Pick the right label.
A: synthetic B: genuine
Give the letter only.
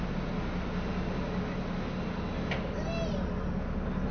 B